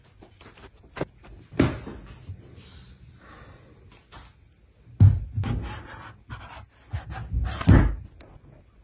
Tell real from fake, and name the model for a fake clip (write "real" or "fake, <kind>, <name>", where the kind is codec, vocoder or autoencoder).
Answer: real